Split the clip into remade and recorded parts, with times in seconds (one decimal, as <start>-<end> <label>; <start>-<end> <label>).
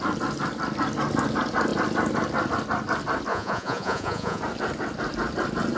0.0-3.3 recorded; 3.3-4.4 remade; 4.4-5.8 recorded